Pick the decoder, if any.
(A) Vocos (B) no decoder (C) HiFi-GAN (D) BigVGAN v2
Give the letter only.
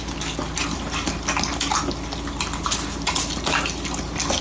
B